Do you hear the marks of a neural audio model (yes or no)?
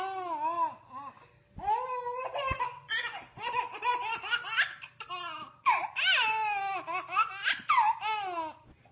no